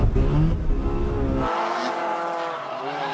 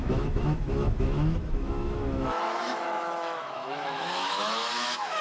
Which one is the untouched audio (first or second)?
first